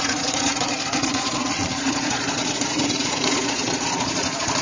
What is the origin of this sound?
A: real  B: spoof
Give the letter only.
B